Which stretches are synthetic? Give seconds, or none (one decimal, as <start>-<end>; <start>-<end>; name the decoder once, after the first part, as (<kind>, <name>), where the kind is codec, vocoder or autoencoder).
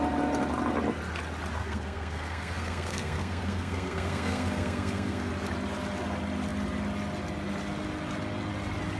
1.6-5.3 (codec, SNAC)